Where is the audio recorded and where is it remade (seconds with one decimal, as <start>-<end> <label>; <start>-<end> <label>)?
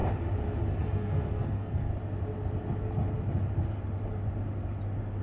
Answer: 0.0-0.8 recorded; 0.8-1.9 remade; 1.9-5.2 recorded